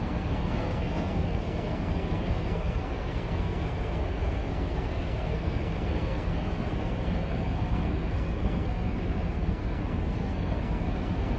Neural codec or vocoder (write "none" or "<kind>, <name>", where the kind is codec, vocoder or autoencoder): codec, SNAC